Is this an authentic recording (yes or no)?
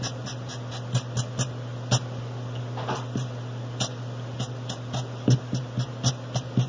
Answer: yes